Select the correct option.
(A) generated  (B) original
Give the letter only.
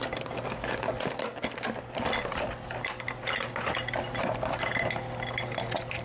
B